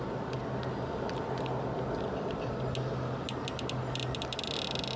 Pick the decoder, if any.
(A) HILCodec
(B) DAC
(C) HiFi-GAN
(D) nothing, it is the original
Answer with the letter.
D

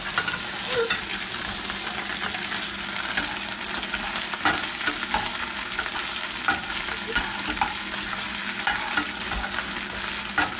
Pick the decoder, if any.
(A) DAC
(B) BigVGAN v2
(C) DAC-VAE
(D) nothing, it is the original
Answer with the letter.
D